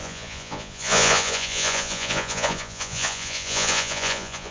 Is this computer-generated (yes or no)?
yes